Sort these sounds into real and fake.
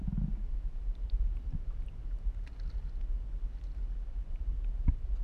real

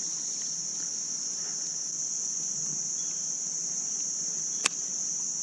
real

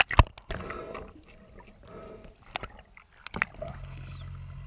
real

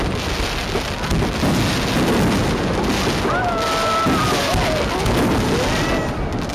real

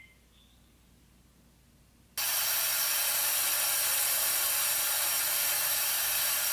real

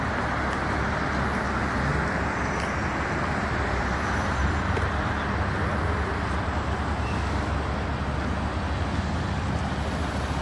real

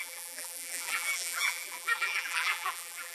fake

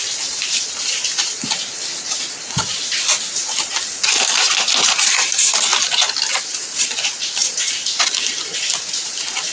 real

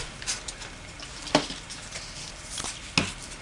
real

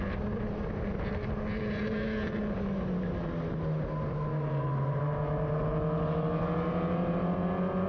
real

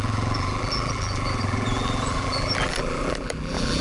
fake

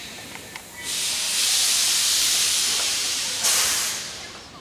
fake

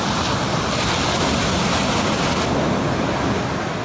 real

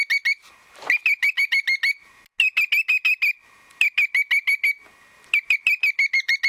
real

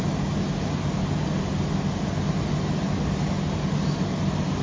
real